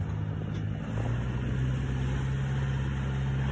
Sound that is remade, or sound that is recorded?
recorded